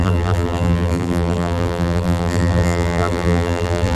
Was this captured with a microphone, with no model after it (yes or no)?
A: no